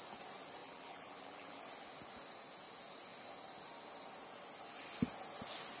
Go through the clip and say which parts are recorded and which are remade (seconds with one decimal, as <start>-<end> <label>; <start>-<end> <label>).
0.0-0.6 recorded; 0.6-1.6 remade; 1.6-5.8 recorded